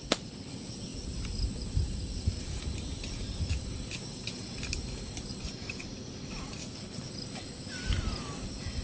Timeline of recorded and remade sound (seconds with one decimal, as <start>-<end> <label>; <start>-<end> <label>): 0.0-6.6 recorded; 6.6-7.1 remade; 7.1-8.8 recorded